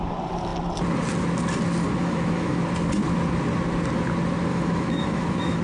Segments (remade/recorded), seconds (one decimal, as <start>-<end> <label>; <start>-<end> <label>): 0.0-2.0 recorded; 2.0-2.6 remade; 2.6-4.5 recorded; 4.5-5.6 remade